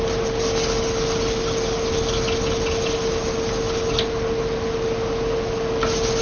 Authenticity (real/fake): real